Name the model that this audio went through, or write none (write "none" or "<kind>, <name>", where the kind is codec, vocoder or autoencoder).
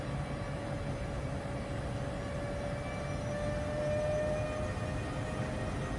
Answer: none